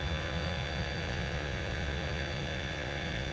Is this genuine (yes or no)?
no